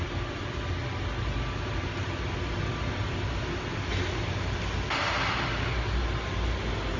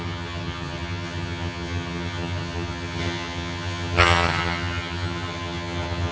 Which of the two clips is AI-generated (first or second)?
second